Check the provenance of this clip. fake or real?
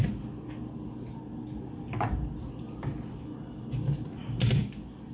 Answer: real